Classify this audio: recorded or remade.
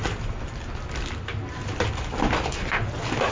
recorded